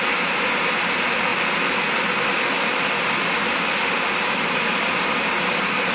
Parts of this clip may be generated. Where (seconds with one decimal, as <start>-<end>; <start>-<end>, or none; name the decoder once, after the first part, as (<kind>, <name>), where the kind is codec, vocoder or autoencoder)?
none